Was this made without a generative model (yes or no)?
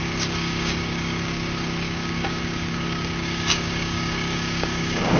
no